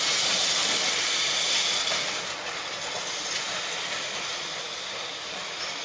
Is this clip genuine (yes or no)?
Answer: yes